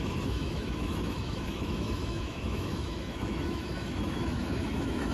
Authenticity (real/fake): fake